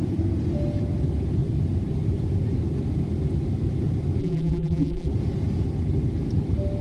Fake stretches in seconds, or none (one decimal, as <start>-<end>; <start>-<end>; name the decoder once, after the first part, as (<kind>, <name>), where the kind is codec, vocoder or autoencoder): 4.2-5.1 (vocoder, BigVGAN v2)